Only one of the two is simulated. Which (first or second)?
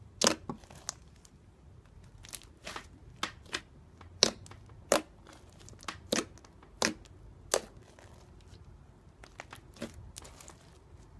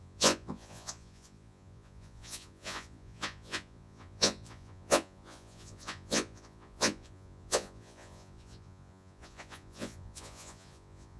second